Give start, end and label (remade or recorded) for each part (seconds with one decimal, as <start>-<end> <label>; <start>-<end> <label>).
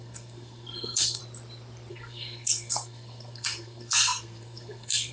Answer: 0.0-1.2 remade; 1.2-1.9 recorded; 1.9-5.1 remade